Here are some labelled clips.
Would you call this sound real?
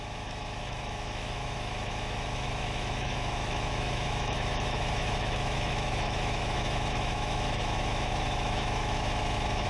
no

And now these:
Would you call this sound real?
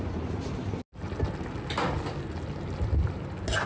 yes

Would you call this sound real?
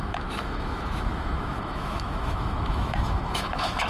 no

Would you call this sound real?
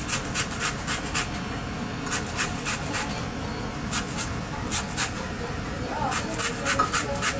yes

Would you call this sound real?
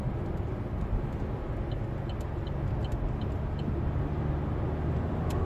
yes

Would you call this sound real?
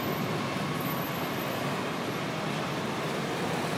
yes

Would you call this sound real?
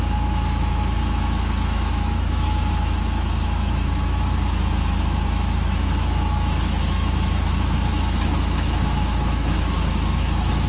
no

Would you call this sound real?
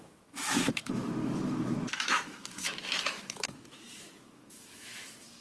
no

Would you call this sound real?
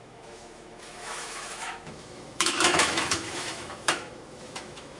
no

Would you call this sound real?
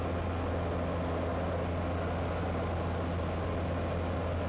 yes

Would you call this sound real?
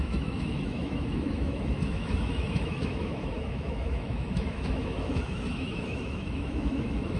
no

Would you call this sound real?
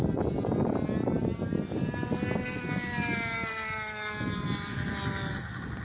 yes